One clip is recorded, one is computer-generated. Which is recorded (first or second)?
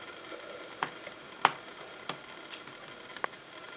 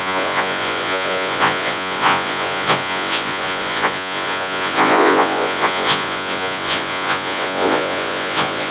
first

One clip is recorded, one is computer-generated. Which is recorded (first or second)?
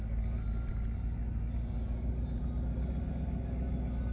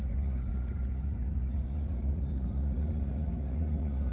first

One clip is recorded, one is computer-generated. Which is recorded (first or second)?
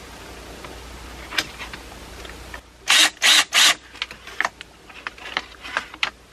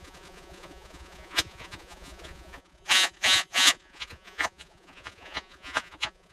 first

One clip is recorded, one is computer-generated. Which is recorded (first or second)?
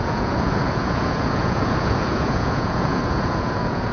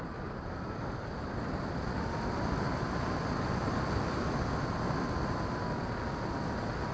second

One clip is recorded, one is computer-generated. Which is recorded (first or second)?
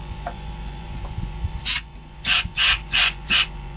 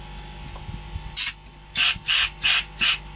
second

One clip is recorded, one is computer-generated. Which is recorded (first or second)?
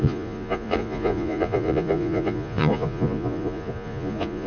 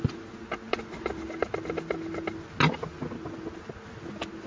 second